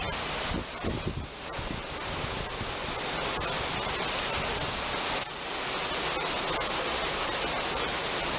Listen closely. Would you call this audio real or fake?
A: real